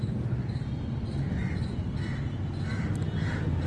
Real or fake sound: real